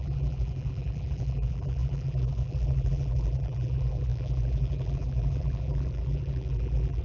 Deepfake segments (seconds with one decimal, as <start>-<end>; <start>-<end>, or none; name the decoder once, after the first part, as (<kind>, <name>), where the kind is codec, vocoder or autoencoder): 0.0-7.0 (vocoder, BigVGAN v2)